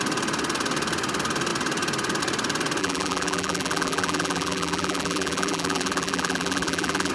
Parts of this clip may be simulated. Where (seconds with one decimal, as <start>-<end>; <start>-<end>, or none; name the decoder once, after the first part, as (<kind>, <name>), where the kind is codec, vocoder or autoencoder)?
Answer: 2.8-7.1 (vocoder, BigVGAN v2)